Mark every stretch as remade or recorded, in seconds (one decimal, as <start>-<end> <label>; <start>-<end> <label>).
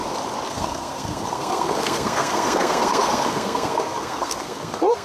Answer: 0.0-0.5 recorded; 0.5-5.0 remade